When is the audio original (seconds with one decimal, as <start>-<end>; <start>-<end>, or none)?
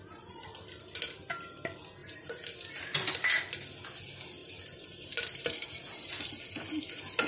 0.0-2.0; 2.5-4.4; 6.1-7.3